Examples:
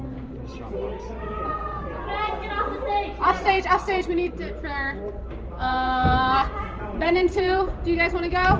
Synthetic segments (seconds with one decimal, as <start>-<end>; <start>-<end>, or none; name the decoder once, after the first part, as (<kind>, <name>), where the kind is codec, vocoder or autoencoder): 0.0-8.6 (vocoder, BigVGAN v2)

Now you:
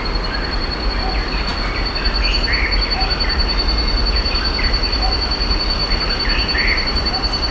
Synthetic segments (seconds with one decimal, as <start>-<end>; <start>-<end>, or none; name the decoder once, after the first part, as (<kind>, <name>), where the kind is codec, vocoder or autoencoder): 5.8-7.1 (vocoder, BigVGAN v2)

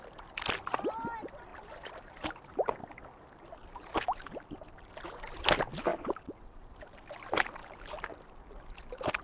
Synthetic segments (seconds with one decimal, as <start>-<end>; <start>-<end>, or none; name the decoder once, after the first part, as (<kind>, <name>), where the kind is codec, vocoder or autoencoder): 1.5-2.3 (vocoder, BigVGAN v2)

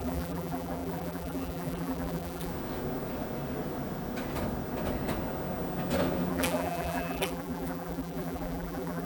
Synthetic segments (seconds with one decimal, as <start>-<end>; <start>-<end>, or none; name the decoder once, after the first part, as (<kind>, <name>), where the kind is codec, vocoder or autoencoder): 0.0-2.5 (vocoder, BigVGAN v2); 6.3-9.0

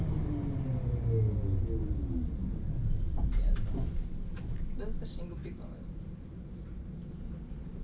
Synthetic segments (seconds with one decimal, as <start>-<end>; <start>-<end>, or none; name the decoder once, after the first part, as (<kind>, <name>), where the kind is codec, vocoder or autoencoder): 2.4-4.5 (vocoder, BigVGAN v2); 5.4-7.2